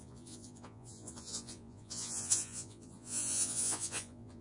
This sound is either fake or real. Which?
fake